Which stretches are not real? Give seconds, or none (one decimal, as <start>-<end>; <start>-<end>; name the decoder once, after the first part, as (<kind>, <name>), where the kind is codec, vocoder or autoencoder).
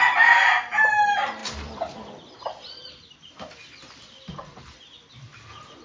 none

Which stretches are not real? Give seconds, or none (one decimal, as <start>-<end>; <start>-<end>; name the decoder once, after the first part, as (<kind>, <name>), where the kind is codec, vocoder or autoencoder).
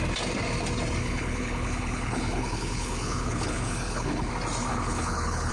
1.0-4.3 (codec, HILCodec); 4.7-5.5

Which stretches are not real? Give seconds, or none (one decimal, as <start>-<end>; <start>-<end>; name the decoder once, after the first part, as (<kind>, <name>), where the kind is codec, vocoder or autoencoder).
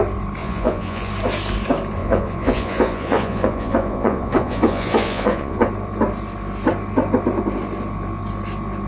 0.4-1.1 (vocoder, Vocos); 2.0-5.7